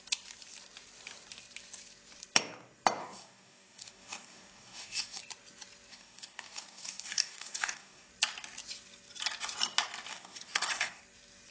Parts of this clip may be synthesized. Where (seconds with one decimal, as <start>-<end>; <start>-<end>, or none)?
3.0-5.2; 5.9-8.1; 10.1-11.0